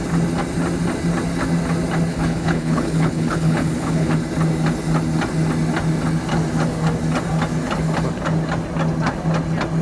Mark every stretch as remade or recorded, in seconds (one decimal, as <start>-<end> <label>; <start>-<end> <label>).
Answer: 0.0-2.1 recorded; 2.1-4.1 remade; 4.1-9.8 recorded